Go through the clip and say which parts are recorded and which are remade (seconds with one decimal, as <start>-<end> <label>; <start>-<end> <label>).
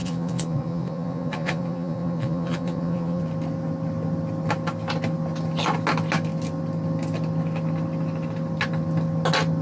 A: 0.0-3.2 remade; 3.2-9.6 recorded